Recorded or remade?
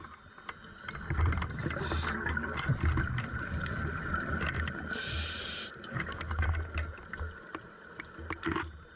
recorded